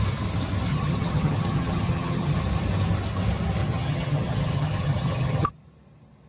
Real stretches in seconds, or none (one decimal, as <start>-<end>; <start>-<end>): 0.0-0.7; 2.4-3.6; 5.5-6.3